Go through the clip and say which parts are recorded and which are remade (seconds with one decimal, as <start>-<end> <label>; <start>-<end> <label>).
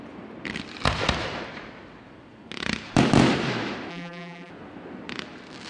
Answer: 0.0-3.9 recorded; 3.9-4.5 remade; 4.5-5.7 recorded